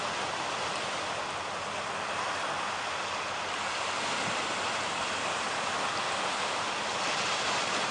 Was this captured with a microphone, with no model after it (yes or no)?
yes